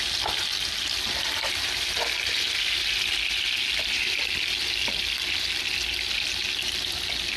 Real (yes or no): yes